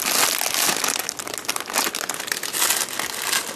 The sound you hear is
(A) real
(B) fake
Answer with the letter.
A